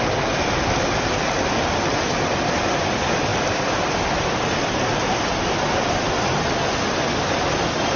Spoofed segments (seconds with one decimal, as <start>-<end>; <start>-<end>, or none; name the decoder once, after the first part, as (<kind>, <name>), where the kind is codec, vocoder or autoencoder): none